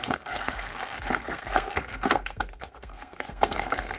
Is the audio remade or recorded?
remade